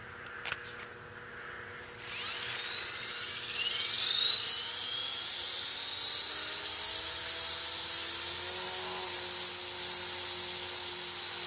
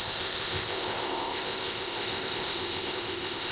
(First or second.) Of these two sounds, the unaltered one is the first